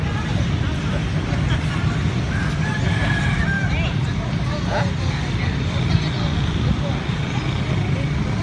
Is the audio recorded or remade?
recorded